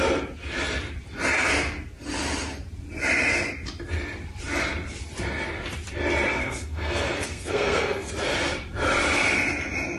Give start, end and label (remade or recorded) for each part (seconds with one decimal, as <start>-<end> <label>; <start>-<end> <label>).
0.0-6.3 recorded; 6.3-8.1 remade; 8.1-10.0 recorded

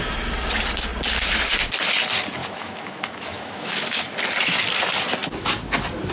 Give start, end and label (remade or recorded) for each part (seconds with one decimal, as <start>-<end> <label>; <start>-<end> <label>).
0.0-2.4 recorded; 2.4-4.0 remade; 4.0-6.1 recorded

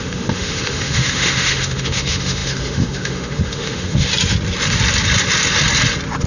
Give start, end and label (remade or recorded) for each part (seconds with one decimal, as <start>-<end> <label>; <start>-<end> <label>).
0.0-4.1 remade; 4.1-6.3 recorded

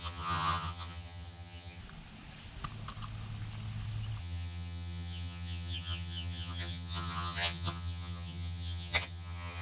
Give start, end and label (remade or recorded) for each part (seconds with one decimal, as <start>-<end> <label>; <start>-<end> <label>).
0.0-1.8 remade; 1.8-4.2 recorded; 4.2-9.6 remade

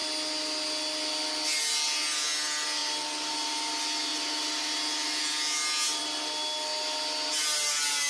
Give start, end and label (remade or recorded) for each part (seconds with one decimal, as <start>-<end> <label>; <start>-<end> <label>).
0.0-8.1 recorded

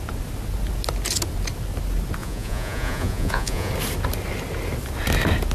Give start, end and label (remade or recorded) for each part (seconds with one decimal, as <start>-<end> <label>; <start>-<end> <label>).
0.0-2.2 recorded; 2.2-3.7 remade; 3.7-5.5 recorded